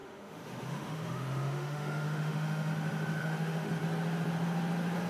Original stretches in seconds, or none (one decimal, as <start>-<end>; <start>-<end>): 2.7-3.2; 3.7-5.1